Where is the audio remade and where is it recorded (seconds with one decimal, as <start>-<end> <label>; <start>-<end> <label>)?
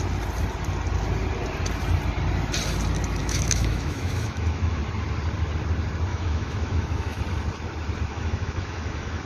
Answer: 0.0-3.2 recorded; 3.2-4.8 remade; 4.8-6.1 recorded; 6.1-7.2 remade; 7.2-8.1 recorded; 8.1-9.3 remade